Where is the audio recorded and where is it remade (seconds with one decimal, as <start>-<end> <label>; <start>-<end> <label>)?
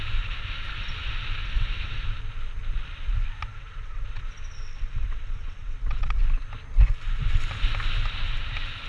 0.0-1.4 recorded; 1.4-2.0 remade; 2.0-3.5 recorded; 3.5-6.2 remade; 6.2-8.9 recorded